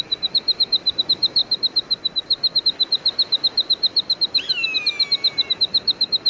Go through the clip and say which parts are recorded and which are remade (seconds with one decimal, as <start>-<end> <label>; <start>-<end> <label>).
0.0-6.3 recorded